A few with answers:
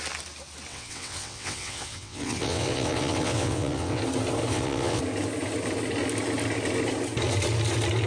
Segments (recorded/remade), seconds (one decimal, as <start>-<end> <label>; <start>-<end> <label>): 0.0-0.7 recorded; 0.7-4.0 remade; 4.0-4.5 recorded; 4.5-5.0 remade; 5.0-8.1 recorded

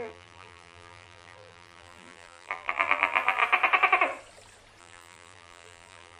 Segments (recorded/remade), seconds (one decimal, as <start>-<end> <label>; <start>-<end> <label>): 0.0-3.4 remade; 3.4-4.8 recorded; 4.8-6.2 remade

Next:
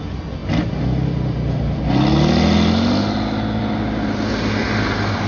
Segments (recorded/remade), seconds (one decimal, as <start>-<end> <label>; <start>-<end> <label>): 0.0-5.3 recorded